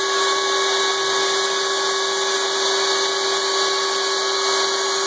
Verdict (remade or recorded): recorded